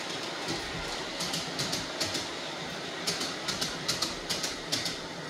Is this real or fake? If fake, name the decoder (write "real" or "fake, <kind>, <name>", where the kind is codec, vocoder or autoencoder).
real